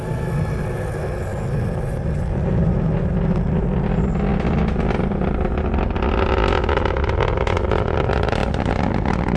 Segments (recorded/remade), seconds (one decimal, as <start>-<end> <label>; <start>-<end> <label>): 0.0-9.4 recorded